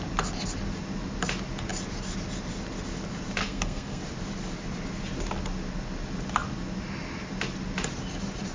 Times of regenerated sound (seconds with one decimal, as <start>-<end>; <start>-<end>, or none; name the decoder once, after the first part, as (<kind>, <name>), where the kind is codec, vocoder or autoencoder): 3.4-4.0 (codec, SNAC)